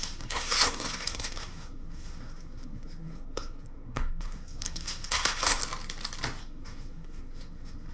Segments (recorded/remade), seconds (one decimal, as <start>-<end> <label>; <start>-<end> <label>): 0.0-5.6 remade; 5.6-6.4 recorded; 6.4-7.9 remade

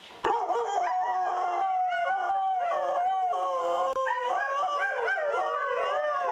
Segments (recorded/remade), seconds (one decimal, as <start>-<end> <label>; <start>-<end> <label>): 0.0-3.6 recorded; 3.6-4.3 remade; 4.3-6.3 recorded